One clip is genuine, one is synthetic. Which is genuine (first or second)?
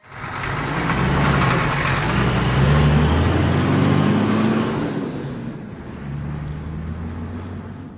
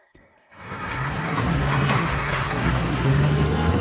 first